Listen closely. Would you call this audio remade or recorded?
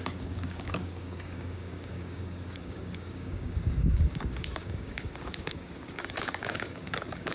remade